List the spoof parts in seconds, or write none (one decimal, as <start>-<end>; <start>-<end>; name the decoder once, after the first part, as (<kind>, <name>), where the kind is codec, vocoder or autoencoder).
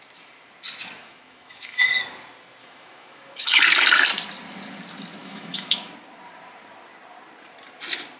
1.0-1.9 (autoencoder, DAC-VAE); 2.6-3.6; 5.2-5.9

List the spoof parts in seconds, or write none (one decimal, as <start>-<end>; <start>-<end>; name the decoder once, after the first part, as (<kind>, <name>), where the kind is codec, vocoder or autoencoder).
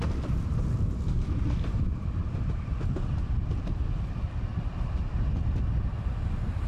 none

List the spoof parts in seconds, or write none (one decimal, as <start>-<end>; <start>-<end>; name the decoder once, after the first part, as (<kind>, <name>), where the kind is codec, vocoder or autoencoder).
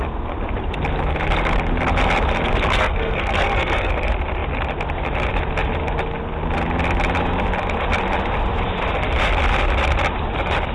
2.8-3.9 (codec, SNAC)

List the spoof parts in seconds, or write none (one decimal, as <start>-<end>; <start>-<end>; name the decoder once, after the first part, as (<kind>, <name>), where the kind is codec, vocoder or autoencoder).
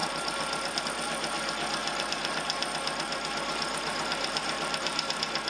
0.0-0.8 (vocoder, BigVGAN v2); 1.8-5.1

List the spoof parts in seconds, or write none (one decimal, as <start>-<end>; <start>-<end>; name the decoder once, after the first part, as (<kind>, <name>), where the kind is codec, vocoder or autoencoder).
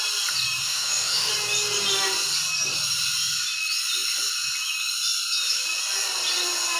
0.6-1.3 (autoencoder, DAC-VAE)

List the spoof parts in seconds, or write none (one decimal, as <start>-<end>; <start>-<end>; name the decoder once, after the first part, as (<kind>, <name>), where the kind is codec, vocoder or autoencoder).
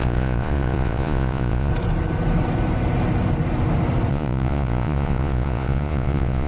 0.0-1.7 (vocoder, Vocos); 4.1-6.5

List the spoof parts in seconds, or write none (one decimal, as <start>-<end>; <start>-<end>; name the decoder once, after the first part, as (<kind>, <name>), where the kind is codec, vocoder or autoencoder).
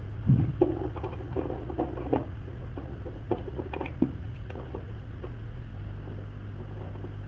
0.0-5.7 (vocoder, Vocos)